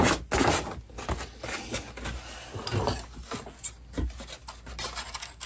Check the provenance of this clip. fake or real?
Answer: real